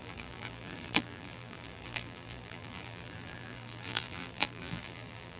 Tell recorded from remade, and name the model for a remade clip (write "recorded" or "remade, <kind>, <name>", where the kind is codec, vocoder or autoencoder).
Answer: remade, vocoder, BigVGAN v2